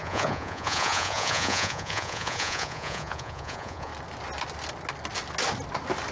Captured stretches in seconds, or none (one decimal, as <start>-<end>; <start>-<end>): 3.9-6.1